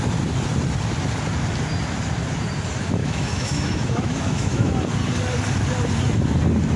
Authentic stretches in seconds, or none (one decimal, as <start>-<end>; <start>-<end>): 0.0-3.0; 4.7-6.8